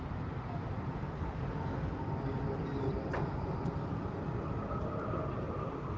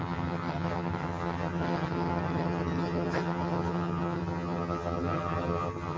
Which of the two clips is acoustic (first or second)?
first